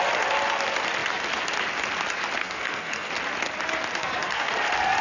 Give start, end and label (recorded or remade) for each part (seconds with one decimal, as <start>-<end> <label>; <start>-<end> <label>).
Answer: 0.0-2.4 recorded; 2.4-3.1 remade; 3.1-4.0 recorded; 4.0-4.5 remade; 4.5-5.0 recorded